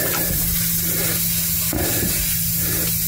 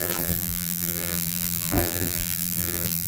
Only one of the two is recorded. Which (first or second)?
first